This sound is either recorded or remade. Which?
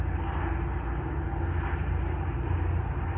recorded